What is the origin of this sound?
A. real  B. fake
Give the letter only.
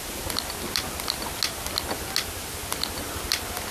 A